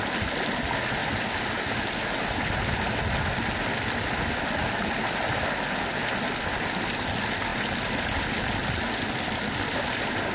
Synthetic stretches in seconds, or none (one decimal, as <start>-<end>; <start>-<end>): none

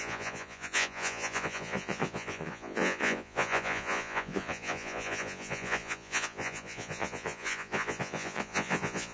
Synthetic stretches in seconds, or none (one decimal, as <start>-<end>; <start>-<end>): 0.0-9.1

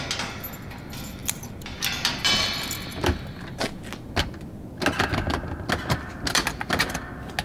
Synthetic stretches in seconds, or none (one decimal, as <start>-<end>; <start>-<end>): none

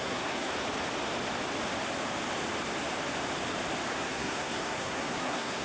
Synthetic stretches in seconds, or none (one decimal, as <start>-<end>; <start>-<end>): 0.0-0.5; 3.9-5.6